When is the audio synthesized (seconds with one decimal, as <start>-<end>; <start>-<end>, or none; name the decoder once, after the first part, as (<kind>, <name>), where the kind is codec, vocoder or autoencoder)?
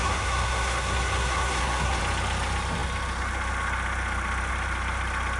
0.0-2.0 (codec, SNAC)